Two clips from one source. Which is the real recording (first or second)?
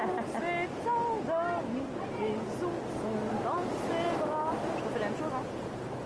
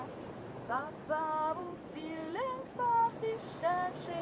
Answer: first